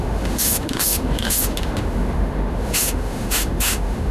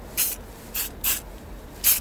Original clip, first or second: second